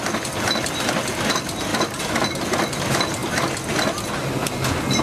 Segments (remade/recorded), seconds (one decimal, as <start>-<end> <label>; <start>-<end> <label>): 0.0-1.7 recorded; 1.7-2.4 remade; 2.4-5.0 recorded